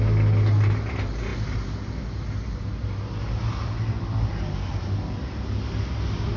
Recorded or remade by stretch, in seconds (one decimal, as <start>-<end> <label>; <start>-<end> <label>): 0.0-6.4 recorded